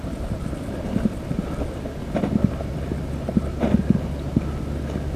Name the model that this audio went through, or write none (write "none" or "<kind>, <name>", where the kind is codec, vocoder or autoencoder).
none